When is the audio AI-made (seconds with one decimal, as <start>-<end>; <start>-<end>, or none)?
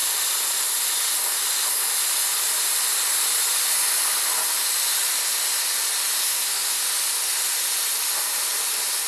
6.2-6.8